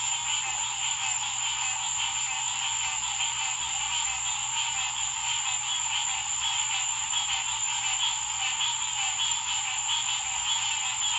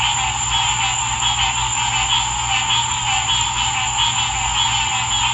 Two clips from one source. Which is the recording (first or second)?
second